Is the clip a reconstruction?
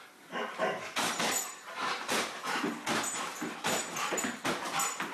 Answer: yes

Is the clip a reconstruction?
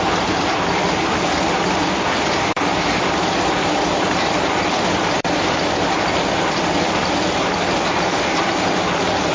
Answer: yes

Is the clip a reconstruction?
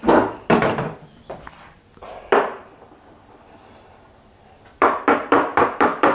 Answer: yes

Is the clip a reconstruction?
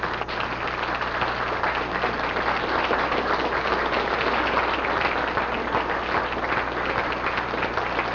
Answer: no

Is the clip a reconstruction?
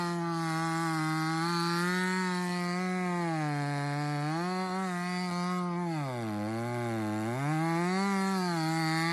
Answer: no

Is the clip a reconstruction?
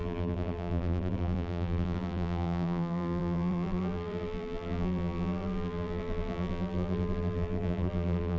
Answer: yes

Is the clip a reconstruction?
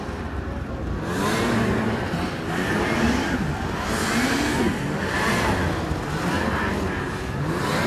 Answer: no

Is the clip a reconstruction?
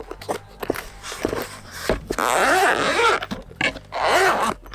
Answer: no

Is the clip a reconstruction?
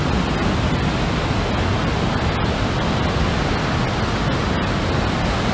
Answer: no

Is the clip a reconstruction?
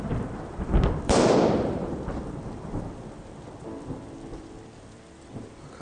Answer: yes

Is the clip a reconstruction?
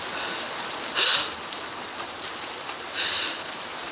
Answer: yes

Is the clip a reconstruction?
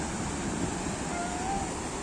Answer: no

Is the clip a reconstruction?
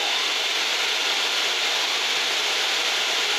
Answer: no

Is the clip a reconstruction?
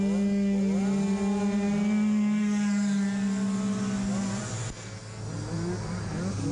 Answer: no